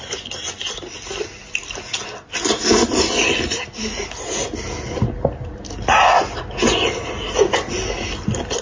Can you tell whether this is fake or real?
real